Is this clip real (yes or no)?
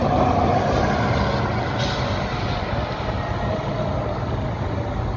yes